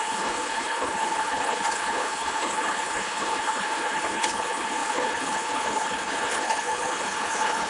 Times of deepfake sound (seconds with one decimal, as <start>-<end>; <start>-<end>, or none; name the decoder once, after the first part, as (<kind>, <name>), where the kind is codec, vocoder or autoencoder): 0.0-7.7 (codec, HILCodec)